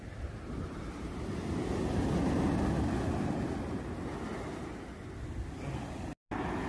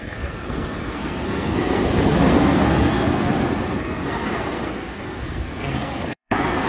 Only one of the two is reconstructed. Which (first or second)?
second